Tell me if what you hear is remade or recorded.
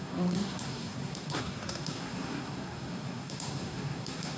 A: remade